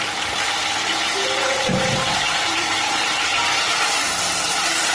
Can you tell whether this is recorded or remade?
remade